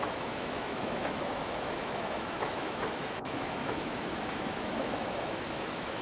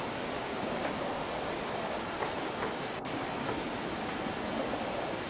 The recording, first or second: second